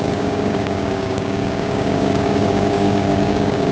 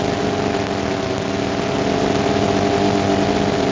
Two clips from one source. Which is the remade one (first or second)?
first